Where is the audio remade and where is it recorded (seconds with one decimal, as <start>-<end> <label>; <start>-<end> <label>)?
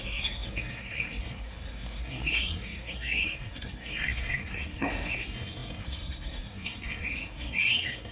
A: 0.0-8.1 remade